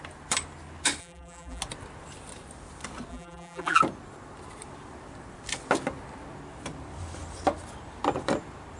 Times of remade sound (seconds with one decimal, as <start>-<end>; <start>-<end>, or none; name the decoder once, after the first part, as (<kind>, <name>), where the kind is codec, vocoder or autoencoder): 1.0-1.6 (vocoder, BigVGAN v2); 3.1-3.8